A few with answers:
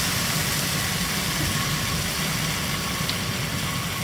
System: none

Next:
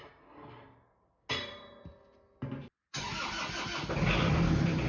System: none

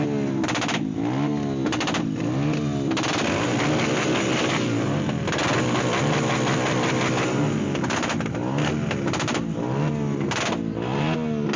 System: none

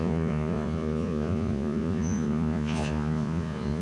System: vocoder, Vocos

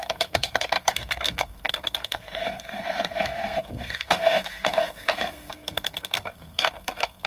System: codec, SNAC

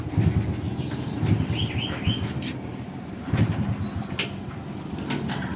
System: none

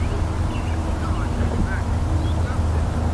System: none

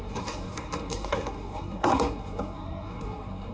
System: codec, SNAC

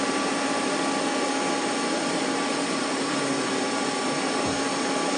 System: none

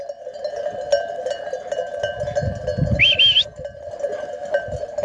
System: none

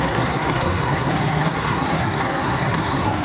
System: codec, SNAC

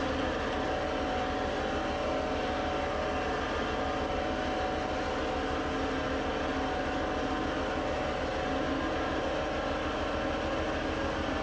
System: none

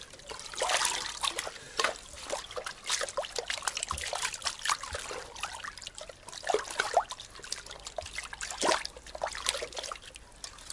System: none